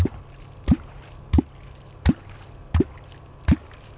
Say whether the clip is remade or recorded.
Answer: recorded